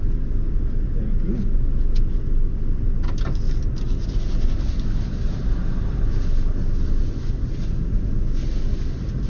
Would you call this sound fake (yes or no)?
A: no